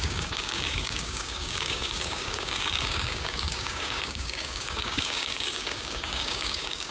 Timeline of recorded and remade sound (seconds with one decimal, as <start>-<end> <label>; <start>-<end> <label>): 0.0-6.9 remade